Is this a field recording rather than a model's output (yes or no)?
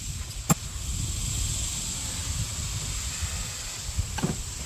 yes